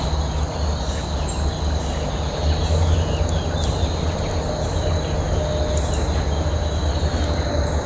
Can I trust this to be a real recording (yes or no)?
yes